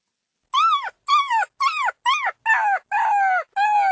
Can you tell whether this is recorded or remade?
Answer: recorded